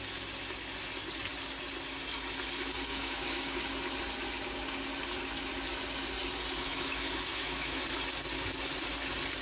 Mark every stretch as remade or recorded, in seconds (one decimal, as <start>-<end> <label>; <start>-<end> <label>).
0.0-2.9 recorded; 2.9-3.6 remade; 3.6-6.7 recorded; 6.7-7.8 remade; 7.8-9.4 recorded